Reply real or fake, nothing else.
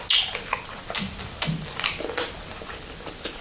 real